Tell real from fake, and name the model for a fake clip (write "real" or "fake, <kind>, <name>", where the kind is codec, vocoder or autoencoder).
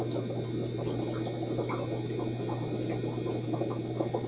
real